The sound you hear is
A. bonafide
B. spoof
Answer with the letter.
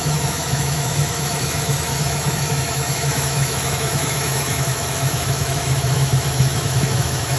B